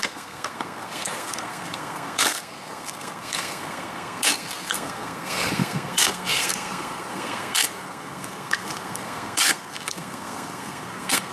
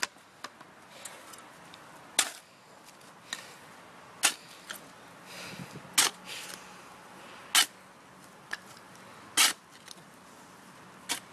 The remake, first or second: first